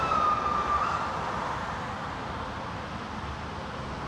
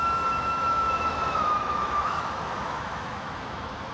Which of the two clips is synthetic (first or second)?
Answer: second